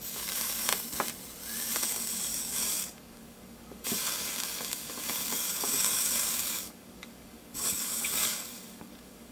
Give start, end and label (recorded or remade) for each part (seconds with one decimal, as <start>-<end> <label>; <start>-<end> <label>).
0.0-0.7 remade; 0.7-1.6 recorded; 1.6-9.3 remade